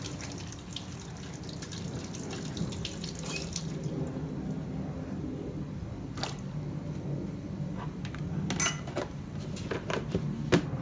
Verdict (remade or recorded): recorded